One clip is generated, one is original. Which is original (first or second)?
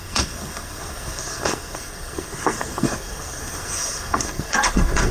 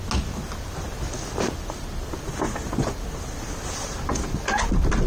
second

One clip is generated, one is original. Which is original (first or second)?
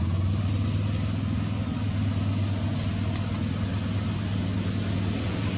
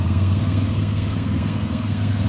first